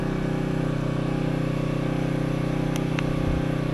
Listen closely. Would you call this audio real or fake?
real